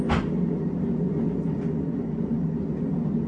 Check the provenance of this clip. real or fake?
real